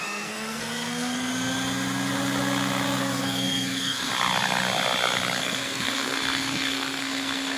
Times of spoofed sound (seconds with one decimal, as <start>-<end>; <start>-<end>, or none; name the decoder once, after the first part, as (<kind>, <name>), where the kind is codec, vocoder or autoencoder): 0.0-1.3 (codec, SNAC); 3.0-4.1; 5.4-7.6